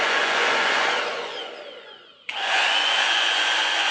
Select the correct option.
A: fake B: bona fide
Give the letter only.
A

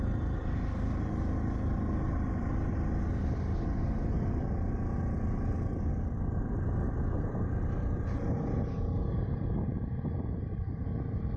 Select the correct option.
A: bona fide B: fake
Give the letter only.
A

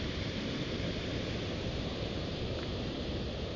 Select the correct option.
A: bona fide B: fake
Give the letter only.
B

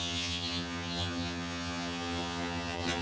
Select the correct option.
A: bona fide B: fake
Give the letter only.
B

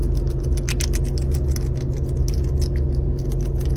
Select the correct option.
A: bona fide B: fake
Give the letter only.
A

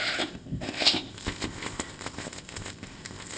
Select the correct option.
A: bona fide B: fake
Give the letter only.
B